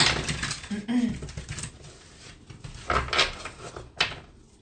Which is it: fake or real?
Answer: real